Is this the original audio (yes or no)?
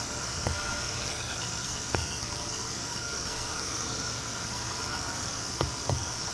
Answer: no